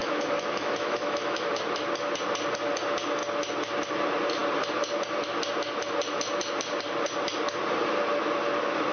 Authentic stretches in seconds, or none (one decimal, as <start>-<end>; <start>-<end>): 1.5-8.9